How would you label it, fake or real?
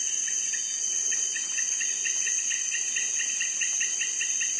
real